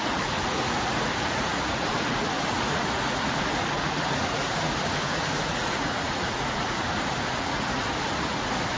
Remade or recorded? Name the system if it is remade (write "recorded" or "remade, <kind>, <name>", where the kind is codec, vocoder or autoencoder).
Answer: remade, vocoder, Vocos